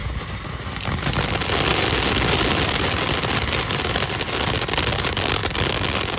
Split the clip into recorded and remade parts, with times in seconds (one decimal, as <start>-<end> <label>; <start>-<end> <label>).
0.0-6.2 recorded